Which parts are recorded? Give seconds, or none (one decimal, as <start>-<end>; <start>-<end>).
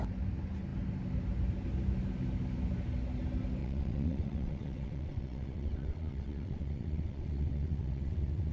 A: 0.0-3.6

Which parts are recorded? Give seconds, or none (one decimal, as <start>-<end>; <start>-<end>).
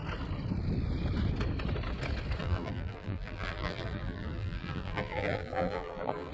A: 0.0-2.4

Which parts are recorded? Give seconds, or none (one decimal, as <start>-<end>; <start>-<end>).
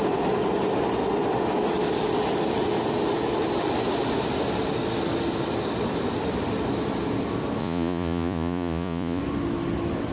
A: 0.0-7.6; 9.2-10.1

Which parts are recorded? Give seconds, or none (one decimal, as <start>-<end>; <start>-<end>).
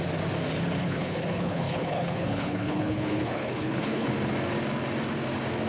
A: 0.0-0.8; 4.1-5.7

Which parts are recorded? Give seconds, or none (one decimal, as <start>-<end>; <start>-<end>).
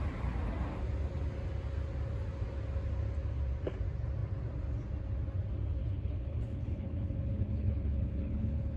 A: 0.0-5.8